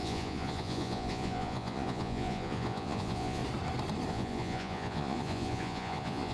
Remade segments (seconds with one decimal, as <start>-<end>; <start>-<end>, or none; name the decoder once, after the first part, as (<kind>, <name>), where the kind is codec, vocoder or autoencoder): 0.0-3.4 (vocoder, Vocos); 4.1-6.3